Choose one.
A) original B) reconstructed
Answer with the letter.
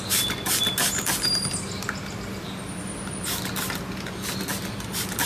A